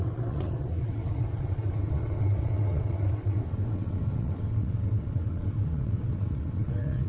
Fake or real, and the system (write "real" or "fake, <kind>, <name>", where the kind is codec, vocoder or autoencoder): fake, vocoder, WaveNeXt